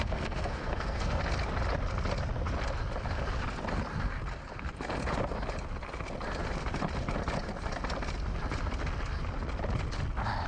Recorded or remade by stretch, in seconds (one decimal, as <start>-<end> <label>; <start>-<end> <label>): 0.0-1.2 remade; 1.2-10.5 recorded